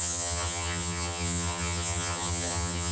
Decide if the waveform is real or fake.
fake